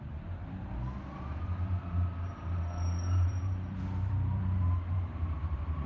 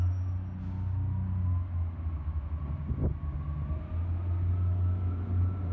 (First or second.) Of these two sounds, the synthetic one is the first